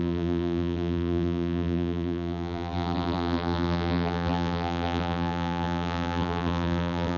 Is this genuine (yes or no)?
no